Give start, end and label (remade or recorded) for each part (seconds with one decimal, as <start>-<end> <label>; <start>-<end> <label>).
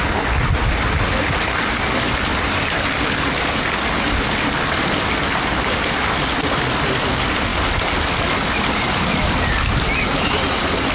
0.0-2.3 recorded; 2.3-3.2 remade; 3.2-7.5 recorded; 7.5-9.3 remade; 9.3-10.9 recorded